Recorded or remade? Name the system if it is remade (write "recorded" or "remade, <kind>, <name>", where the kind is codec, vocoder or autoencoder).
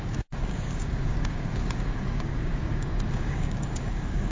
remade, codec, DAC